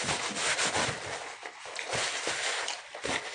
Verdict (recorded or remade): recorded